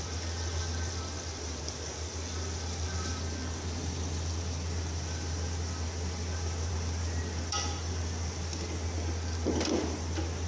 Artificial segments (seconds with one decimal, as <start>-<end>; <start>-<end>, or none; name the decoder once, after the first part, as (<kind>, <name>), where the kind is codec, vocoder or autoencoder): none